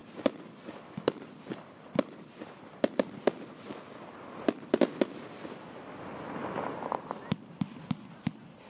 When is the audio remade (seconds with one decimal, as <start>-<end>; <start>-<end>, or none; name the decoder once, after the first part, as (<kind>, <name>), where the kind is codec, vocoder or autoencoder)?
6.4-7.9 (vocoder, BigVGAN v2)